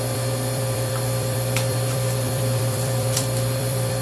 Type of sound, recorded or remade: remade